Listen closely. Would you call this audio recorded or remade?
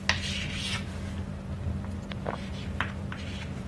recorded